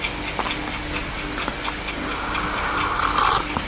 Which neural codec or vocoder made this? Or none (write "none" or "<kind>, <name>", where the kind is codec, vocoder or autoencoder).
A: none